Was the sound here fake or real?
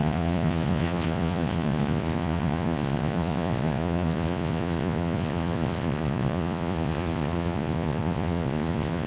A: fake